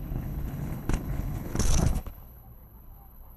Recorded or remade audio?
remade